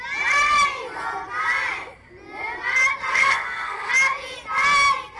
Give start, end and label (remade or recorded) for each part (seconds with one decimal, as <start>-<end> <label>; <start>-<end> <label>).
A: 0.0-3.1 recorded; 3.1-3.9 remade; 3.9-5.2 recorded